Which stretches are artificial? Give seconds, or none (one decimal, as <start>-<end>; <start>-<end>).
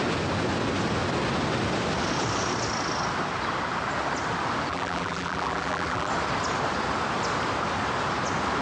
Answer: 4.7-6.1